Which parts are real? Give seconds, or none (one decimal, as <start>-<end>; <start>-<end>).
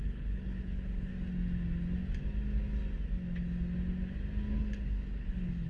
1.1-4.5